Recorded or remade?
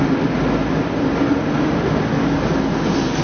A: recorded